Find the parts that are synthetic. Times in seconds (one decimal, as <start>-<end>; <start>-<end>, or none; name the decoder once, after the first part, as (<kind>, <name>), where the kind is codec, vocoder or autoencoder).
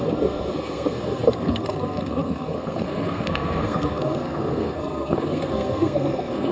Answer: 0.0-6.5 (codec, SNAC)